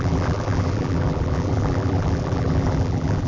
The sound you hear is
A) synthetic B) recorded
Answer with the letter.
A